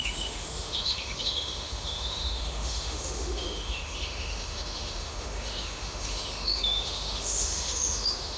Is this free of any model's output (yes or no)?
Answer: no